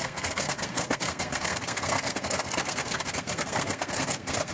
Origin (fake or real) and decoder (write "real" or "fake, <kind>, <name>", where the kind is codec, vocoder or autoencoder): fake, codec, SNAC